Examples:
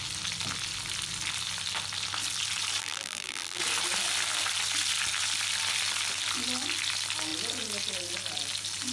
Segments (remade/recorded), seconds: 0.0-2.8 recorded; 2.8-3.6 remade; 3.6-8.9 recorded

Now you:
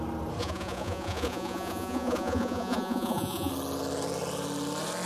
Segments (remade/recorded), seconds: 0.0-0.4 recorded; 0.4-3.5 remade; 3.5-5.1 recorded

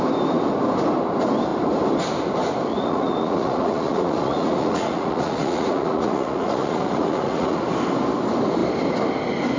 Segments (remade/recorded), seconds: 0.0-2.7 recorded; 2.7-7.6 remade; 7.6-9.6 recorded

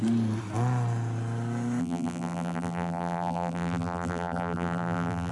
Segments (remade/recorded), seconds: 0.0-1.8 recorded; 1.8-5.3 remade

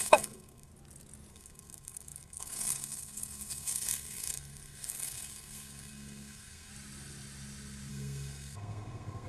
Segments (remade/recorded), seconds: 0.0-0.7 remade; 0.7-1.3 recorded; 1.3-6.7 remade; 6.7-7.9 recorded; 7.9-9.3 remade

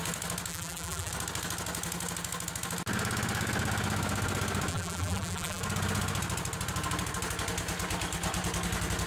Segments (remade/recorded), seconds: 0.0-0.5 recorded; 0.5-1.1 remade; 1.1-4.7 recorded; 4.7-5.6 remade; 5.6-9.1 recorded

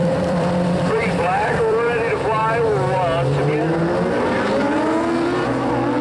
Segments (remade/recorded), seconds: 0.0-2.4 remade; 2.4-6.0 recorded